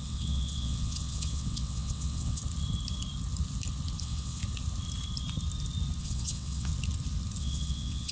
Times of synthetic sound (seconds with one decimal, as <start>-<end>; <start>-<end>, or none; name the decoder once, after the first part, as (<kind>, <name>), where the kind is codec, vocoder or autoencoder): 0.0-2.4 (vocoder, WaveNeXt); 4.0-4.4; 6.0-6.7; 7.4-8.1